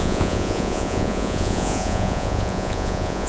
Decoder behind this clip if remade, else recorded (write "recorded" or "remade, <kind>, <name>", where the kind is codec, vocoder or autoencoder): remade, vocoder, Vocos